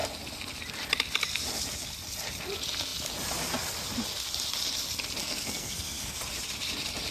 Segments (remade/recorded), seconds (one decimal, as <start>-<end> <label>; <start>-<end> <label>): 0.0-5.2 recorded; 5.2-6.2 remade; 6.2-7.1 recorded